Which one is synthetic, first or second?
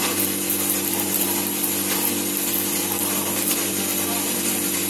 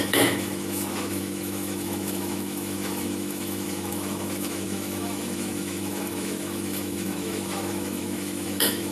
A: second